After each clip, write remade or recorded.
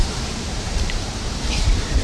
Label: remade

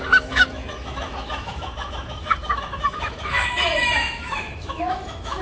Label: remade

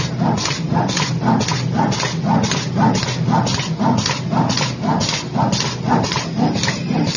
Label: recorded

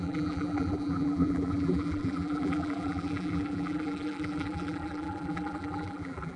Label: remade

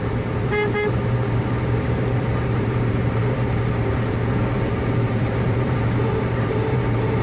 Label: remade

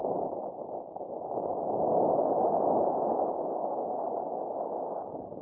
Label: recorded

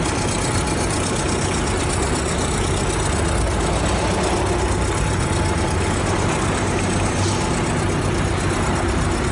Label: recorded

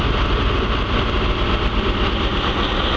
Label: recorded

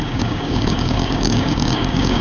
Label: remade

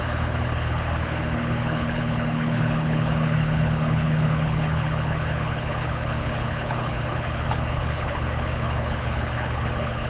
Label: remade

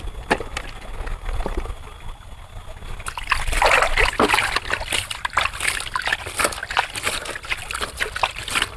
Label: recorded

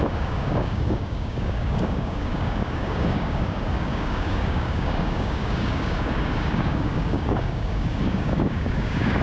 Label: remade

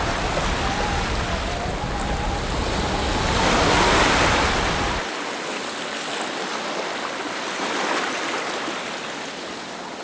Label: recorded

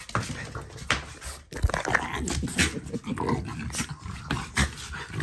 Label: recorded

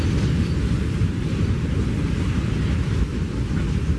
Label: recorded